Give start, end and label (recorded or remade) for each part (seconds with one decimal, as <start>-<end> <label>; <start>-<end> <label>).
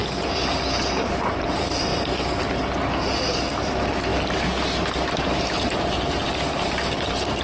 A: 0.0-1.1 recorded; 1.1-1.9 remade; 1.9-3.5 recorded; 3.5-4.1 remade; 4.1-5.3 recorded; 5.3-7.4 remade